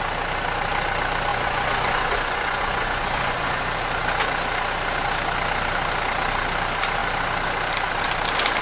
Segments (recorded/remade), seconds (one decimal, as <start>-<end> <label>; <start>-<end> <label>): 0.0-1.3 recorded; 1.3-3.6 remade; 3.6-8.6 recorded